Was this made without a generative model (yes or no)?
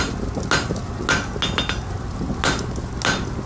yes